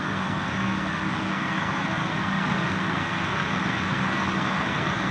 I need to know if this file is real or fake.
fake